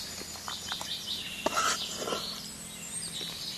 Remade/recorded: recorded